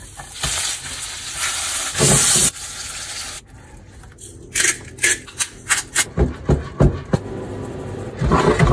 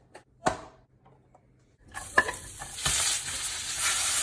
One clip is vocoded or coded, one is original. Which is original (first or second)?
first